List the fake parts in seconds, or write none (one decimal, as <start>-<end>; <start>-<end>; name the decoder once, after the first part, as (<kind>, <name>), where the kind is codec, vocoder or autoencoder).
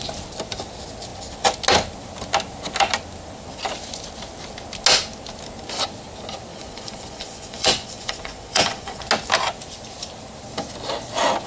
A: 6.5-9.0 (vocoder, Vocos)